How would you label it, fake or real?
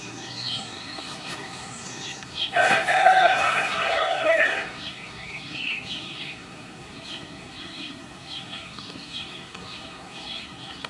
fake